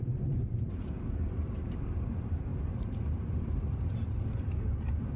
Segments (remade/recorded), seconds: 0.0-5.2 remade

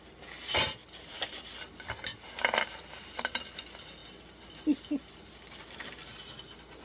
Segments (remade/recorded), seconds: 0.0-0.8 recorded; 0.8-1.6 remade; 1.6-6.8 recorded